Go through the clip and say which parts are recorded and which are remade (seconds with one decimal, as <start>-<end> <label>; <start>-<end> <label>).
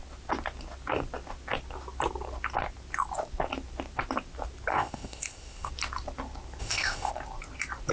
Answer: 0.0-4.7 recorded; 4.7-5.7 remade; 5.7-6.6 recorded; 6.6-7.1 remade; 7.1-7.9 recorded